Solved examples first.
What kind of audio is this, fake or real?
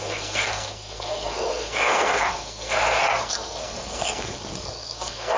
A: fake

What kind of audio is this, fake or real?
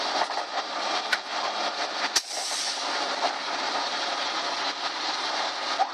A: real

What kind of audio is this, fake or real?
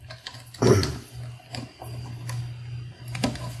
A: real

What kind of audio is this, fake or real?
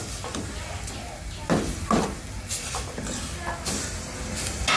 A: real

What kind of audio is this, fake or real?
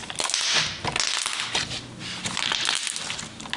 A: real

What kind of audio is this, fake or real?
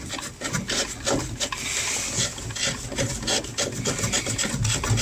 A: real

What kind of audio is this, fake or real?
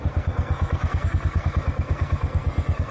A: fake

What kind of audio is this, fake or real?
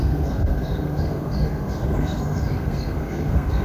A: fake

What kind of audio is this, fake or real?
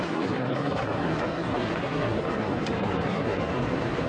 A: fake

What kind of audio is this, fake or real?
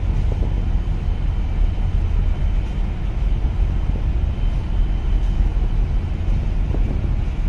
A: real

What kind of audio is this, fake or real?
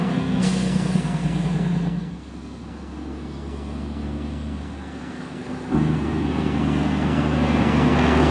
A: fake